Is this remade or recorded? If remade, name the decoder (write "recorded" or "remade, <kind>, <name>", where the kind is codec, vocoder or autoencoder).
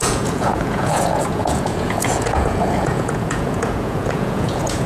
remade, vocoder, Vocos